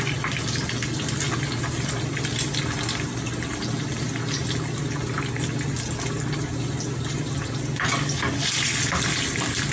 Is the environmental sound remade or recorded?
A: recorded